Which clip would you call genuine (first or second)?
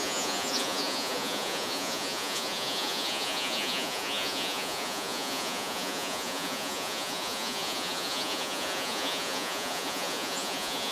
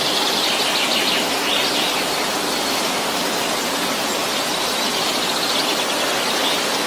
second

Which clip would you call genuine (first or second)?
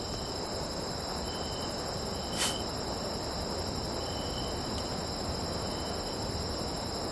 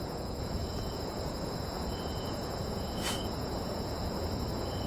first